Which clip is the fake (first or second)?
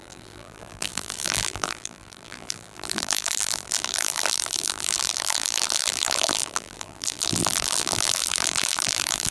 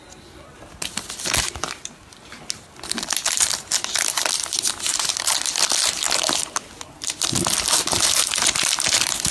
first